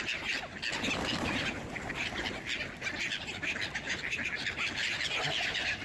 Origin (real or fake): real